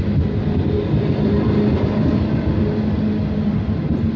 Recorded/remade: recorded